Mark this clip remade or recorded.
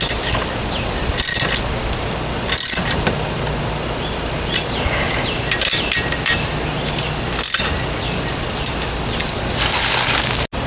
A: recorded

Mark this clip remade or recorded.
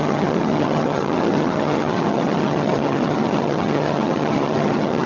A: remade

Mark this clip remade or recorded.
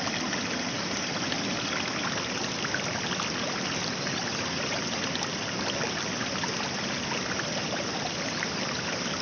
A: recorded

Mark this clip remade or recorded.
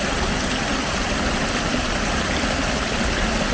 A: recorded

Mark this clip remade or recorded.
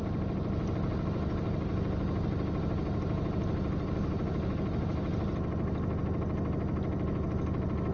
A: recorded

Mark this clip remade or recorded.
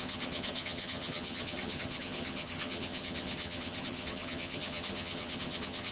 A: remade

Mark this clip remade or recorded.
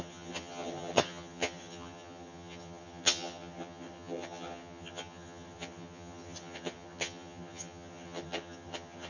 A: remade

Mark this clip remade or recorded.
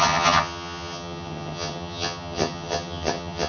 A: remade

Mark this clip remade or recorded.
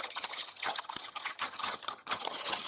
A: remade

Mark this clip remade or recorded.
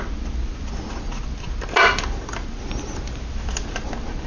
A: recorded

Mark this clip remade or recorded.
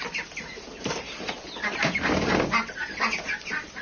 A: recorded